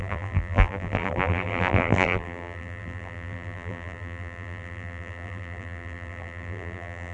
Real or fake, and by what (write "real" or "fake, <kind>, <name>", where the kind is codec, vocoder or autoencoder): fake, vocoder, BigVGAN v2